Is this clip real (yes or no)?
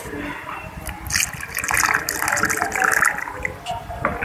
yes